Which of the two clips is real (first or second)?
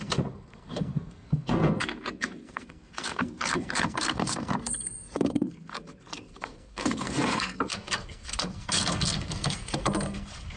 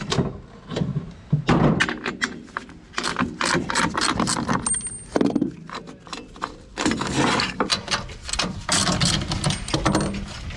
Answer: second